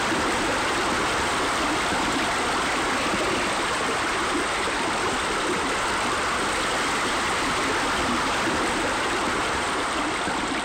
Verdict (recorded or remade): remade